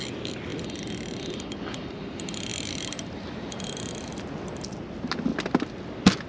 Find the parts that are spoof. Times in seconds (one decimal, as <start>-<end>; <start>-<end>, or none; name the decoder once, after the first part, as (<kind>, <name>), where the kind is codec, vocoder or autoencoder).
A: none

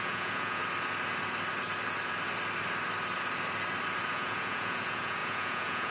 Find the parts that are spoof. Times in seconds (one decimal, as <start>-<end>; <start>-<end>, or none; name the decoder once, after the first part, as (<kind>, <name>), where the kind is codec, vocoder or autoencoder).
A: 0.0-0.6 (vocoder, Vocos); 4.1-5.9

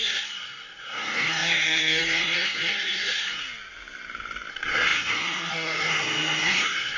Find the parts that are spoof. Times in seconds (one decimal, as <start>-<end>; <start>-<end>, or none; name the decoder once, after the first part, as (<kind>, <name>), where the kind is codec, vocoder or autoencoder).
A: 0.0-3.4 (codec, SNAC); 4.5-7.0